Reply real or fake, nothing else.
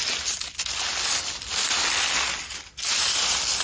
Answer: real